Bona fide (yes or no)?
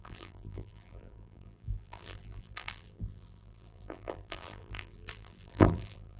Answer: no